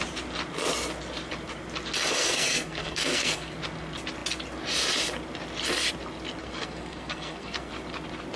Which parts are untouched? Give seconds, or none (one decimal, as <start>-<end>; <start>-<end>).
0.0-2.2; 3.5-6.4; 7.7-8.4